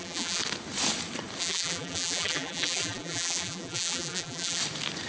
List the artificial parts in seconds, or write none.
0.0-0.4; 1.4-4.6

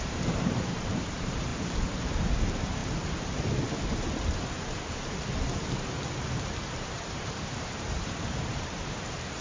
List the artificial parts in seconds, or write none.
0.0-2.8; 6.6-9.4

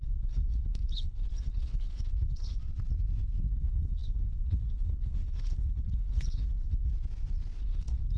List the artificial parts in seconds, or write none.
0.0-2.6; 3.5-6.9; 7.6-8.2

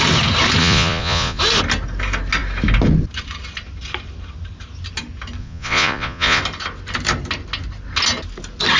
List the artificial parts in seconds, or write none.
0.6-1.4; 5.4-6.4

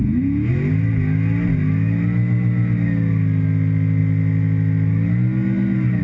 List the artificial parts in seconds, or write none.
0.0-0.5

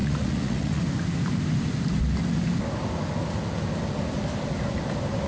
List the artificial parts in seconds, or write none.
0.0-0.8

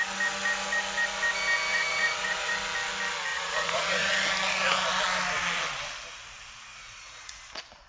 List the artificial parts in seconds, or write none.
1.7-2.5; 3.3-4.1; 6.7-7.3